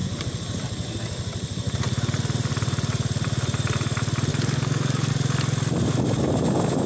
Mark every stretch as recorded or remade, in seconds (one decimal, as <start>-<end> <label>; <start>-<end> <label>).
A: 0.0-4.3 recorded; 4.3-5.1 remade; 5.1-6.9 recorded